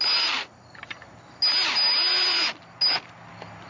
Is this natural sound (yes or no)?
yes